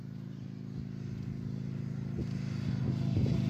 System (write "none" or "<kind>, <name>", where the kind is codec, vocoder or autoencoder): none